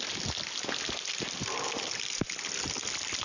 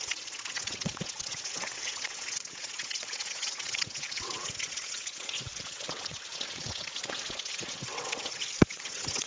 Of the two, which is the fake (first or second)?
second